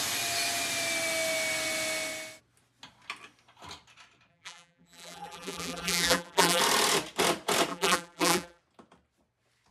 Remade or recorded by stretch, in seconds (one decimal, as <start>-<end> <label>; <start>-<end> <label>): 0.0-4.3 recorded; 4.3-6.6 remade; 6.6-7.7 recorded; 7.7-8.6 remade; 8.6-9.7 recorded